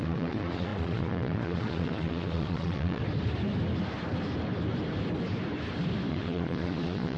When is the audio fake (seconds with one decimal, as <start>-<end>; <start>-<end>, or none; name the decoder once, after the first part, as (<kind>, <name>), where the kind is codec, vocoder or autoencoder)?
0.0-3.0 (vocoder, Vocos); 6.1-7.2